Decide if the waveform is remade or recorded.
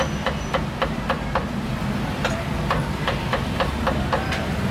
recorded